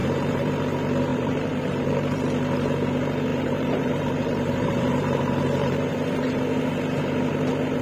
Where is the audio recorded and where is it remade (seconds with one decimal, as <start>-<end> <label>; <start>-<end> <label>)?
0.0-0.5 remade; 0.5-1.1 recorded; 1.1-2.2 remade; 2.2-3.3 recorded; 3.3-6.4 remade; 6.4-7.8 recorded